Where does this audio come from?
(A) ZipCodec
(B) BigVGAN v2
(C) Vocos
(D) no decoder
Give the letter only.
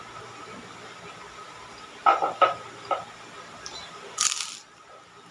D